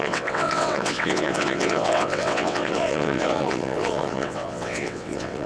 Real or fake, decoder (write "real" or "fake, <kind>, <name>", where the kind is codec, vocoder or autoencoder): fake, vocoder, WaveNeXt